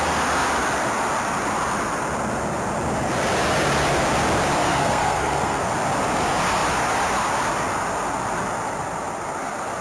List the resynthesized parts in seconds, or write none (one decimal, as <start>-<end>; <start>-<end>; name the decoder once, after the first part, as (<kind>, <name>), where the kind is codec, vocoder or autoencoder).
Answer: 4.6-5.7 (codec, SNAC)